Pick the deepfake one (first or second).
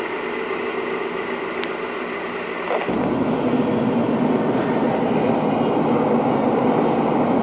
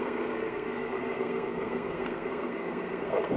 second